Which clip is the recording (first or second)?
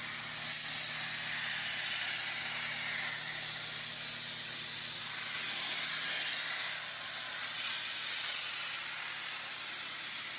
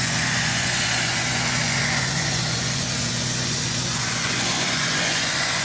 first